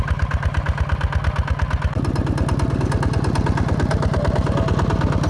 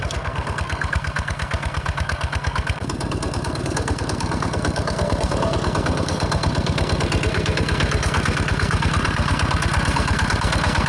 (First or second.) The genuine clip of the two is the first